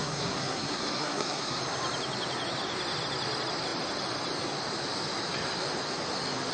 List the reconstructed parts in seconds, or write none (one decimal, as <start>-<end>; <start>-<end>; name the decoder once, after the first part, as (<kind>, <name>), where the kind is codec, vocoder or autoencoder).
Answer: 0.0-1.6 (codec, SNAC)